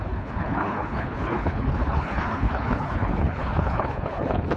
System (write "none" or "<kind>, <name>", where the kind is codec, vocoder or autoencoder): codec, HILCodec